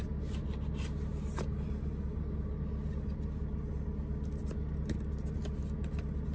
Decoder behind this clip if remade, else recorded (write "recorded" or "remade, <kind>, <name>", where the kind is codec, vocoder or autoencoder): recorded